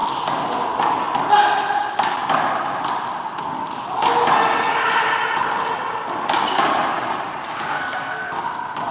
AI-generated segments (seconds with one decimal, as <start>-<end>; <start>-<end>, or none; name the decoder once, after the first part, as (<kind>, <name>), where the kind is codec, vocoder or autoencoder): 7.7-8.4 (codec, SNAC)

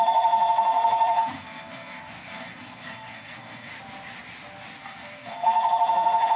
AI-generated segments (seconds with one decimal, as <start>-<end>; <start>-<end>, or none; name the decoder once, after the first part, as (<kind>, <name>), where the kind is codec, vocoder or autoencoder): 0.0-3.7 (codec, SNAC); 4.8-6.4

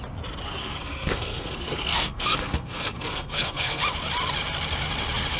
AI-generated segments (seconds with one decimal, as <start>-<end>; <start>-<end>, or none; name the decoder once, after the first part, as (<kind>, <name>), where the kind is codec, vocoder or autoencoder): 0.6-3.8 (codec, SNAC)

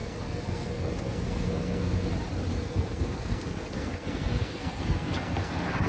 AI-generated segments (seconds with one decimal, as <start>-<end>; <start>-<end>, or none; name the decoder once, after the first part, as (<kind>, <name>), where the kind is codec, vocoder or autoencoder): 0.0-2.1 (codec, SNAC); 2.5-5.9

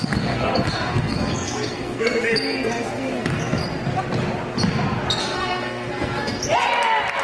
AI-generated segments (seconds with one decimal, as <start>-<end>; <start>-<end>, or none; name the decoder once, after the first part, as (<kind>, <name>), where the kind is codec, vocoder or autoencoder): 0.0-3.6 (codec, SNAC); 5.2-6.4

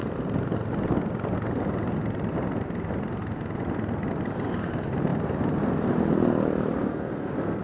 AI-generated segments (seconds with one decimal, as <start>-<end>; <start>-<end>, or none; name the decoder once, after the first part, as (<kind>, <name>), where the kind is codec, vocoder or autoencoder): 6.9-7.6 (codec, SNAC)

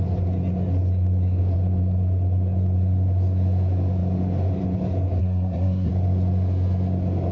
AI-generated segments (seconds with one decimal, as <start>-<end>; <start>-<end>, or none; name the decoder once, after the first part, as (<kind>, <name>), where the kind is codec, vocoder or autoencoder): 5.2-5.9 (codec, SNAC)